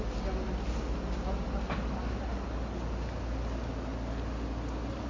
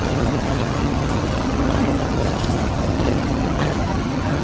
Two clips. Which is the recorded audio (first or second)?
first